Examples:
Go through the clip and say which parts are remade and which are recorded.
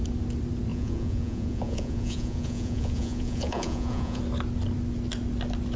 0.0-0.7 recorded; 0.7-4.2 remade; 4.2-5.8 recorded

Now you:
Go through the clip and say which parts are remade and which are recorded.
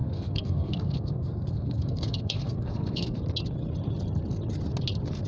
0.0-3.2 remade; 3.2-5.3 recorded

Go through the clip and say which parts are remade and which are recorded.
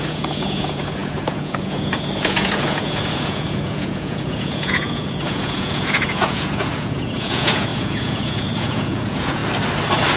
0.0-9.4 remade; 9.4-10.2 recorded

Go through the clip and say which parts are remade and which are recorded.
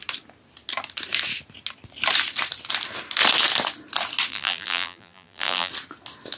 0.0-4.3 recorded; 4.3-5.7 remade; 5.7-6.4 recorded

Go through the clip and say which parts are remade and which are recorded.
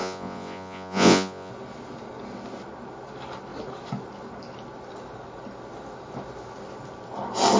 0.0-1.5 remade; 1.5-7.6 recorded